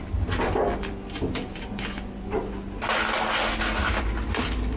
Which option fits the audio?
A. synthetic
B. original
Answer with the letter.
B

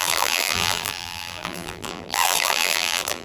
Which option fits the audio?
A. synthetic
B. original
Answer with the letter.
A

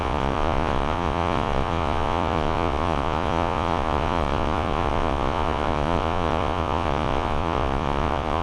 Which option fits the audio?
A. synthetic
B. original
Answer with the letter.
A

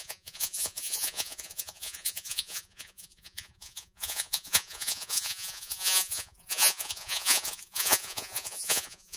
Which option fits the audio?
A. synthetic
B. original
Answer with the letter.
A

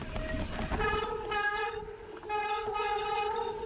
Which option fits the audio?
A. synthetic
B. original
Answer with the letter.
B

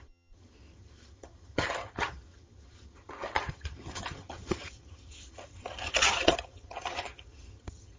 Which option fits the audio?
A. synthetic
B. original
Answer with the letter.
A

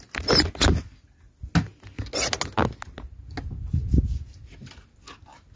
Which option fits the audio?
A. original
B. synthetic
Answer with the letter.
A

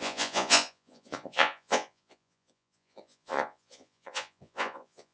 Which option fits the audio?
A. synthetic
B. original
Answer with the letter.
A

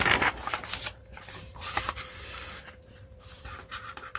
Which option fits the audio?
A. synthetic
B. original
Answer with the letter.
A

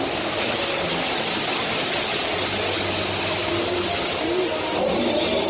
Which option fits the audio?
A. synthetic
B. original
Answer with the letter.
B